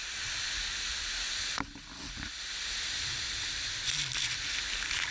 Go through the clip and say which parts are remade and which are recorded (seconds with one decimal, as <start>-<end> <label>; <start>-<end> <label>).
0.0-5.1 recorded